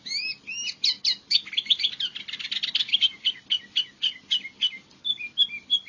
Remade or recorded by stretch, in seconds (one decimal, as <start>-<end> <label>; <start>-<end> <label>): 0.0-5.9 recorded